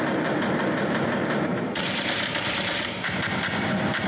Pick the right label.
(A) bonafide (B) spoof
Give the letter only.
B